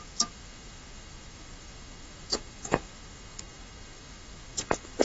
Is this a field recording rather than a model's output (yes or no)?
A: no